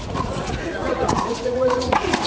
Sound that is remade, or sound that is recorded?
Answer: remade